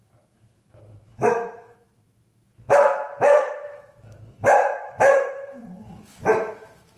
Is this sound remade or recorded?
remade